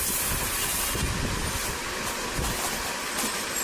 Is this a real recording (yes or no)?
yes